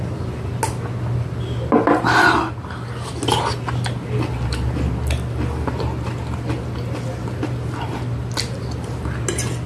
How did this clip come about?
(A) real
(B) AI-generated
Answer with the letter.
A